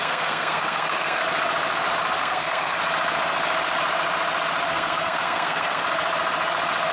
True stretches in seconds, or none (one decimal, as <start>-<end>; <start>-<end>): 1.2-2.2; 2.8-4.7; 5.8-6.9